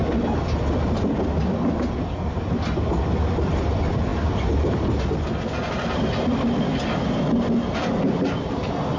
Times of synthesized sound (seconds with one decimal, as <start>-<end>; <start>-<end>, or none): none